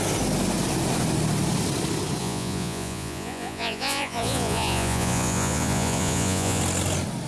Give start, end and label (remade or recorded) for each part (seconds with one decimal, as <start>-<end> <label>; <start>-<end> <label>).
0.0-2.2 recorded; 2.2-6.6 remade; 6.6-7.3 recorded